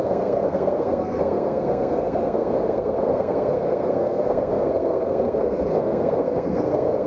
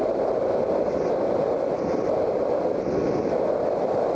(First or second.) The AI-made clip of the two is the first